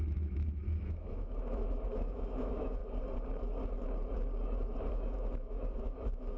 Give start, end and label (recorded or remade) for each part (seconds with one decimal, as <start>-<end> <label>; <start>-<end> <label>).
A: 0.0-2.8 remade; 2.8-4.9 recorded; 4.9-6.4 remade